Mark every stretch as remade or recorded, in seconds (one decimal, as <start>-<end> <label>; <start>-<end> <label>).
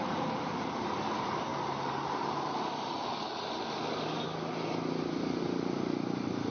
0.0-1.5 remade; 1.5-5.4 recorded; 5.4-6.5 remade